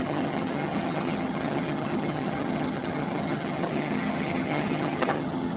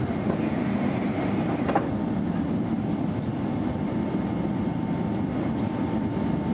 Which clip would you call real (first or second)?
second